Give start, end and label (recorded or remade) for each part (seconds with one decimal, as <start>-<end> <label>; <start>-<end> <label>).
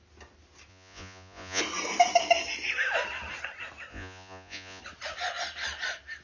0.0-0.7 recorded; 0.7-1.6 remade; 1.6-3.9 recorded; 3.9-4.8 remade; 4.8-6.2 recorded